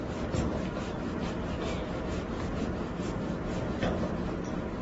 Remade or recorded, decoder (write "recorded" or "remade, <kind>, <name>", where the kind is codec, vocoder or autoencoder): recorded